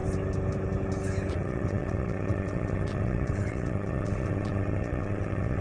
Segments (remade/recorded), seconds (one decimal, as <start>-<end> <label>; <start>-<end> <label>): 0.0-1.3 recorded; 1.3-5.6 remade